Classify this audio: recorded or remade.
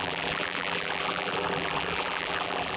remade